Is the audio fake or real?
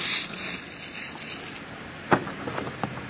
real